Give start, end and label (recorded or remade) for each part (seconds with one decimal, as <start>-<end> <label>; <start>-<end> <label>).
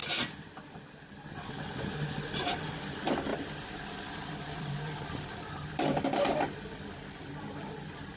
0.0-3.3 recorded; 3.3-8.2 remade